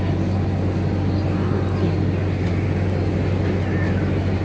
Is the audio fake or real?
real